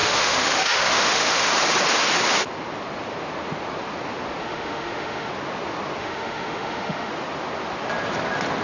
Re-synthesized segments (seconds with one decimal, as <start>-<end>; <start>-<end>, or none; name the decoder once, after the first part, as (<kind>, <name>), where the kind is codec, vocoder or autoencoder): 0.0-1.5 (autoencoder, DAC-VAE); 4.4-5.3; 6.0-7.1

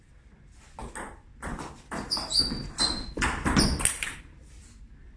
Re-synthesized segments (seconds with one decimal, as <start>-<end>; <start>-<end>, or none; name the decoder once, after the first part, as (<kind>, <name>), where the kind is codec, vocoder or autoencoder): none

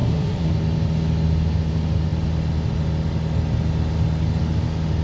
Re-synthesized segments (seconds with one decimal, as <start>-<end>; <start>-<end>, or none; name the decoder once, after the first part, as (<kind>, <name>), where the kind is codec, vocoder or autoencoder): 0.0-0.5 (codec, SNAC)